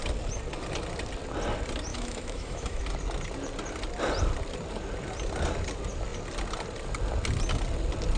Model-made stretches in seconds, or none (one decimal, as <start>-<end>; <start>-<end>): 1.9-2.8